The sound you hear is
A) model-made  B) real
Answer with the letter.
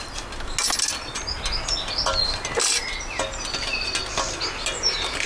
B